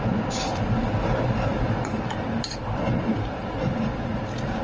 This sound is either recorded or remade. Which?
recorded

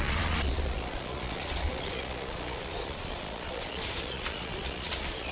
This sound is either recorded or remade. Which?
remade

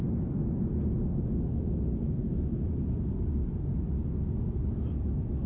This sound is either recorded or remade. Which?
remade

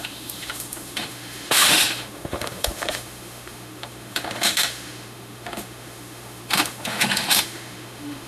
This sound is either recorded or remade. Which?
remade